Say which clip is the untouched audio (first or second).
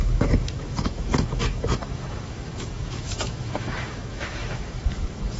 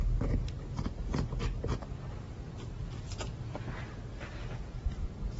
second